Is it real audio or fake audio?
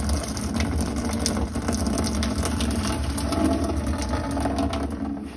real